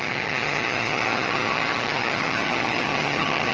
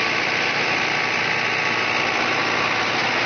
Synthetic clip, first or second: first